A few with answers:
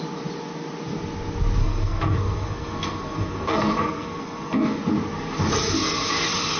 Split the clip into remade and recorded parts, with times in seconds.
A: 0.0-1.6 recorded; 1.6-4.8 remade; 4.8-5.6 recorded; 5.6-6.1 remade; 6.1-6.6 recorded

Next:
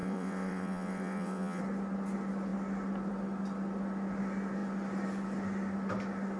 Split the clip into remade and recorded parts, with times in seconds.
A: 0.0-1.6 remade; 1.6-6.4 recorded

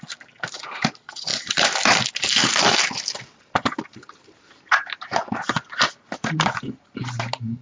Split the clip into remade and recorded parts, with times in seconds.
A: 0.0-7.6 recorded

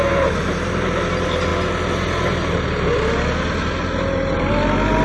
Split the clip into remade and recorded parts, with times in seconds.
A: 0.0-5.0 recorded

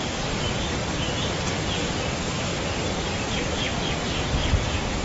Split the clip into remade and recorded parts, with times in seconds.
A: 0.0-2.5 recorded; 2.5-3.7 remade; 3.7-5.0 recorded